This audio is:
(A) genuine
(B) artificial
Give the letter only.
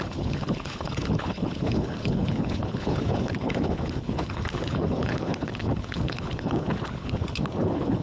B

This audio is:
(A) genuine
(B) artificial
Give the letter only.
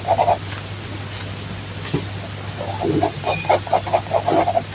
A